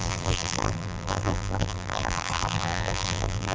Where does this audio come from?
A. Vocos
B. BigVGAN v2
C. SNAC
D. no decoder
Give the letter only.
B